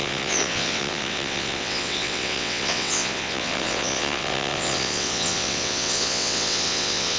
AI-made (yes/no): yes